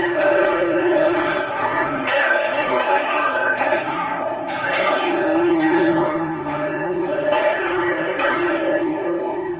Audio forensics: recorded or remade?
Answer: remade